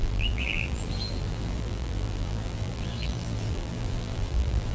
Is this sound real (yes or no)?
no